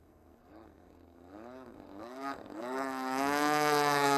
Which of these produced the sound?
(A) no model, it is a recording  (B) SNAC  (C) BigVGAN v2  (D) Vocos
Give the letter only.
B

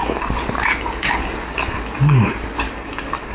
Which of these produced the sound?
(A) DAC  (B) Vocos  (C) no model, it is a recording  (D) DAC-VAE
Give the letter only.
A